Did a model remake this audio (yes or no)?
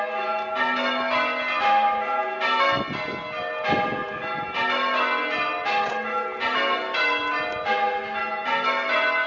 no